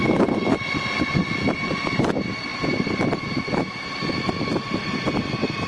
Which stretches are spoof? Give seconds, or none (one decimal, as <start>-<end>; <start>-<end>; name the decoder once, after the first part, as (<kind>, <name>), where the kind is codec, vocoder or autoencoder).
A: none